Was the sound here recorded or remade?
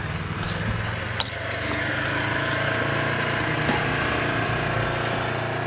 recorded